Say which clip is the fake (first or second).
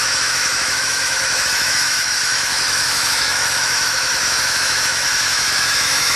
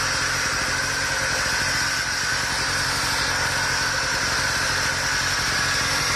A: first